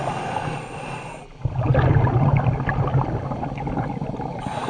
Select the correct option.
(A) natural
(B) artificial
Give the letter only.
A